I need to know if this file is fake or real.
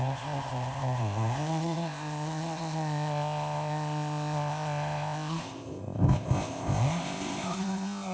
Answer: fake